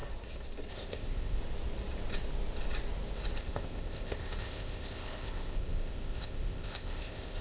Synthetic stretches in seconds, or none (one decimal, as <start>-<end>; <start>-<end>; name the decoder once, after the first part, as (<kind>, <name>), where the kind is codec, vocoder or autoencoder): 0.7-1.4 (codec, ZipCodec); 3.4-7.4